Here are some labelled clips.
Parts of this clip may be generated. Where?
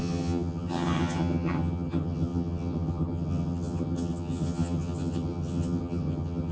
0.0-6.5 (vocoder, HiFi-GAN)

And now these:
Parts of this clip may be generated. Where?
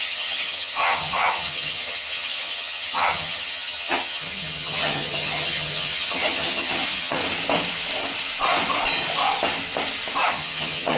0.0-7.2 (vocoder, HiFi-GAN); 10.3-11.0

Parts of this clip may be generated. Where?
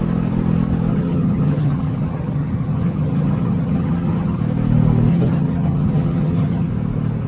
0.9-4.4 (vocoder, HiFi-GAN); 5.1-6.7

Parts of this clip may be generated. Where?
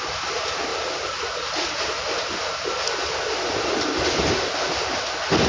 none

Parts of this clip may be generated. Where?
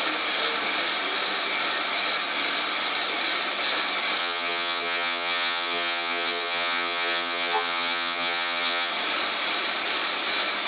4.2-8.9 (vocoder, HiFi-GAN)